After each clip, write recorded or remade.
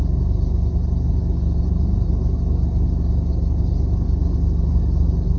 recorded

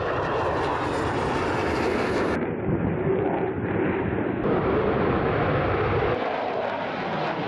recorded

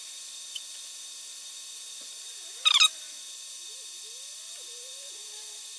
remade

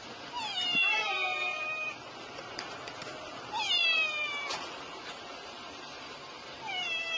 remade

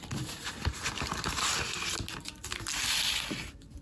recorded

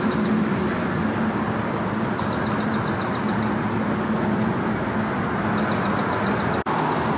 recorded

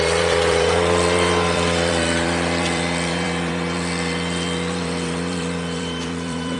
remade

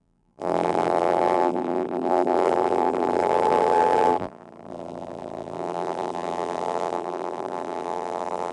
remade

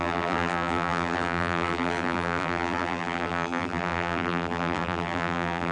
remade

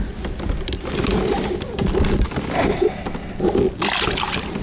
recorded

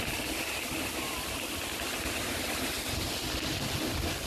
recorded